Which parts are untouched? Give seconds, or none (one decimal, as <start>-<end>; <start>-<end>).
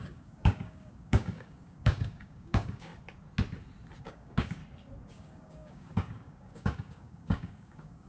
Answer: 2.9-4.0; 4.6-5.1